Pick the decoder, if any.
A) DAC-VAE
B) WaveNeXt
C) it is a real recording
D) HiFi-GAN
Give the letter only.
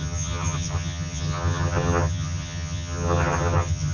D